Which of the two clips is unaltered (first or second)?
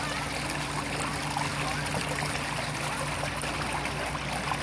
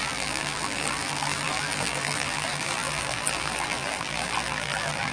first